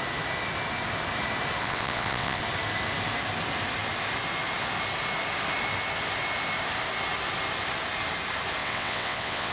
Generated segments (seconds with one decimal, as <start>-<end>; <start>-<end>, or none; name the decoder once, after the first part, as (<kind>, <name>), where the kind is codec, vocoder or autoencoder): 1.6-2.4 (vocoder, WaveNeXt); 8.6-9.5